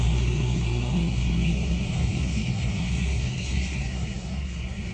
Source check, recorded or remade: remade